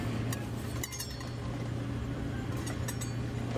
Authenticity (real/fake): real